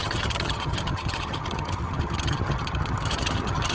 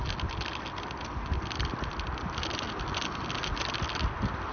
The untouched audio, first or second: second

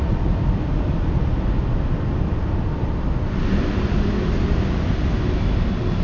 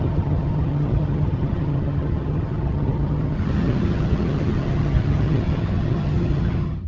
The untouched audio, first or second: first